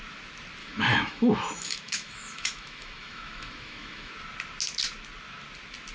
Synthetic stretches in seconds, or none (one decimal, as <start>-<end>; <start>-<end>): 0.6-4.1

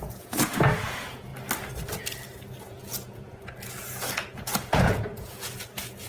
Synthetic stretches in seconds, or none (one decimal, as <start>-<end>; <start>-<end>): 0.0-1.3; 2.6-6.1

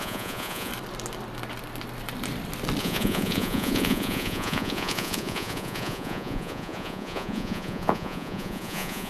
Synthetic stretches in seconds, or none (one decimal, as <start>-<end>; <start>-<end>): 0.0-0.7; 2.8-9.1